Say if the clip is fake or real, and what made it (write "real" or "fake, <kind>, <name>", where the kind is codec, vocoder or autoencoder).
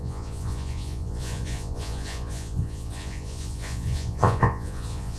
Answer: fake, vocoder, Vocos